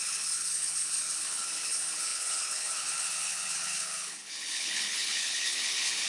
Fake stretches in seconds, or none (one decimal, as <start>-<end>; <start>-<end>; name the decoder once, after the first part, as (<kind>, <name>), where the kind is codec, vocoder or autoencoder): 0.0-6.1 (codec, HILCodec)